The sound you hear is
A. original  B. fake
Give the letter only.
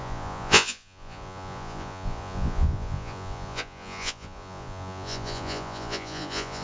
B